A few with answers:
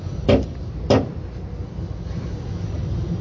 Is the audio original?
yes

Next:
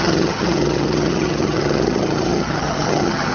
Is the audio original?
no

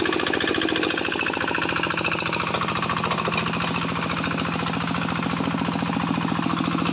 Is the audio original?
yes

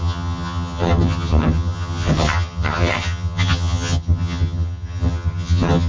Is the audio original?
no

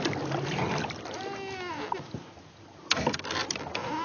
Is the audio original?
yes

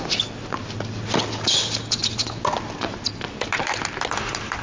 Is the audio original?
yes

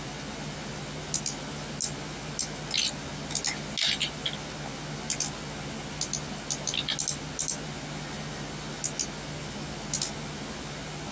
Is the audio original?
yes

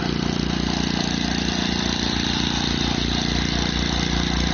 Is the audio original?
yes